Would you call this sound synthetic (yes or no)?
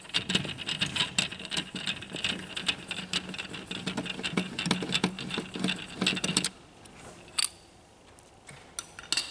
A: no